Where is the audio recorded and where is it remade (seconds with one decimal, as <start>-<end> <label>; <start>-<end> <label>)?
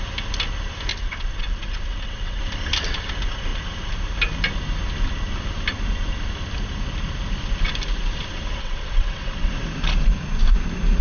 0.0-0.9 recorded; 0.9-2.4 remade; 2.4-8.6 recorded; 8.6-9.5 remade; 9.5-11.0 recorded